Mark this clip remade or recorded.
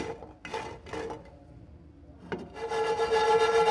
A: recorded